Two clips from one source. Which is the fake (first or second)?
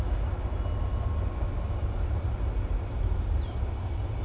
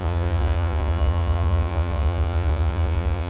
second